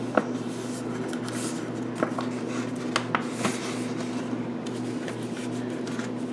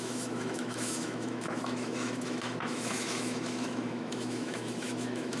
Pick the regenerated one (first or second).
second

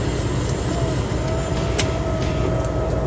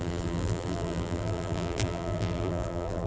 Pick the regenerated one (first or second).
second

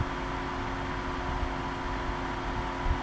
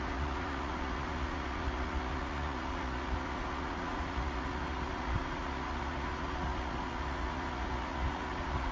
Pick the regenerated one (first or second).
second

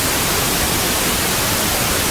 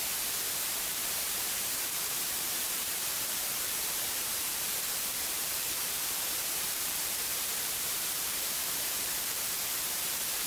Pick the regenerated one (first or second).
second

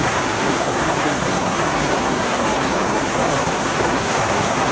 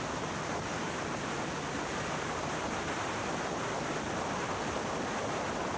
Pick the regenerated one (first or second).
first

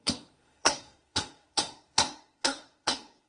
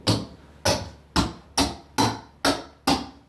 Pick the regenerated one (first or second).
first